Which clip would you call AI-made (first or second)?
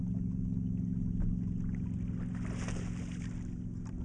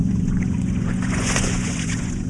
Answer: second